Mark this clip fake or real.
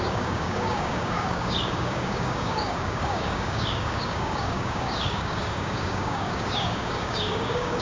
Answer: fake